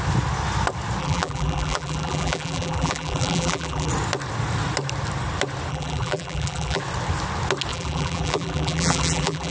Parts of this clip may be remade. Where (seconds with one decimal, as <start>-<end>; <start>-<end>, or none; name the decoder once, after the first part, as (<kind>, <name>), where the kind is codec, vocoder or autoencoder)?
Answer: 1.0-3.9 (vocoder, BigVGAN v2); 5.7-6.8; 7.7-9.5